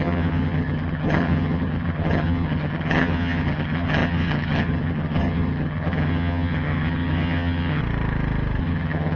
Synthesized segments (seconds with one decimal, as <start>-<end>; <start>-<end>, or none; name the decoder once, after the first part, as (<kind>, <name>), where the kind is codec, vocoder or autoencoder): 0.0-7.8 (vocoder, HiFi-GAN); 8.6-9.2